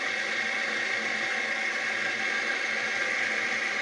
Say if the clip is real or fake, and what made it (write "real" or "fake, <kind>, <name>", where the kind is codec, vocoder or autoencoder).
real